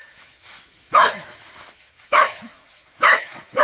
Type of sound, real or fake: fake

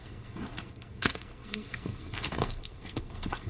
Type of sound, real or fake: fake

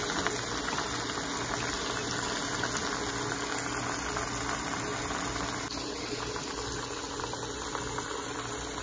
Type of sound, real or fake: real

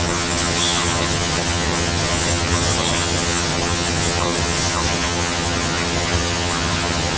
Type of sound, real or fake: fake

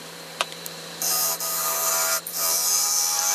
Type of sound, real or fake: fake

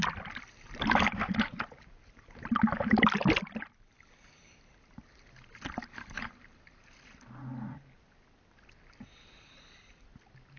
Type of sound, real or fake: real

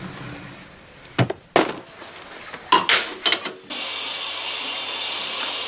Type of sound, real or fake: real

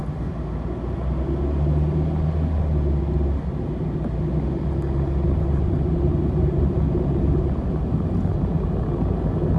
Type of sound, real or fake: real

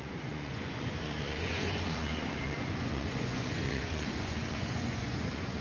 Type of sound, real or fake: fake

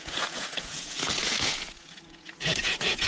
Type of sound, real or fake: fake